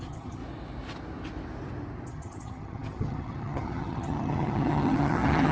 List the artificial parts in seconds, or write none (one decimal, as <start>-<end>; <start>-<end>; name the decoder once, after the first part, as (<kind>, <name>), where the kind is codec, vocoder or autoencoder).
0.0-0.4 (vocoder, HiFi-GAN); 2.1-5.5